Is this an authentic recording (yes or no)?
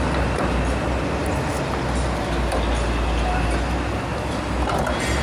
yes